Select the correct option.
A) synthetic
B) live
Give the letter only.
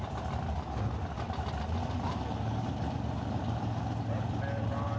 B